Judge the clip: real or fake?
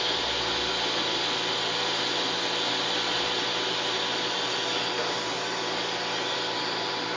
real